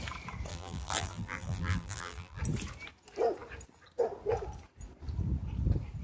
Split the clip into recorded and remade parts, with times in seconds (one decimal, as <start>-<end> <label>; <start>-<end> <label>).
0.0-0.5 recorded; 0.5-2.4 remade; 2.4-6.0 recorded

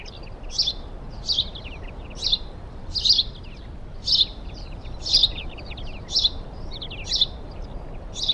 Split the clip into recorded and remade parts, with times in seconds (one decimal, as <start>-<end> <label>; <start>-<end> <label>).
0.0-4.3 recorded; 4.3-6.8 remade; 6.8-8.3 recorded

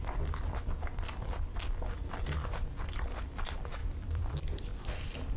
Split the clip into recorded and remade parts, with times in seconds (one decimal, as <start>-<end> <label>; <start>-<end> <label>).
0.0-3.8 recorded; 3.8-4.3 remade; 4.3-4.7 recorded; 4.7-5.4 remade